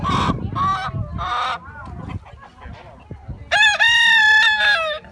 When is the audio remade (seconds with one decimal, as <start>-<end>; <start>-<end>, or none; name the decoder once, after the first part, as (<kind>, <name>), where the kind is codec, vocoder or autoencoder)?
none